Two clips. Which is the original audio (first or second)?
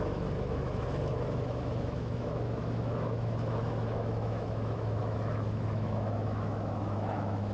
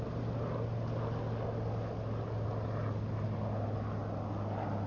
second